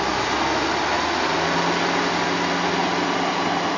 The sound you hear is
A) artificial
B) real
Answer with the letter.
B